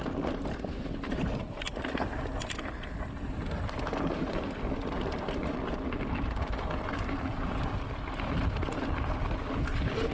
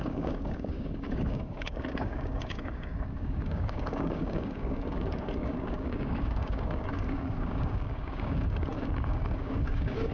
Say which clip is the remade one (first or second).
second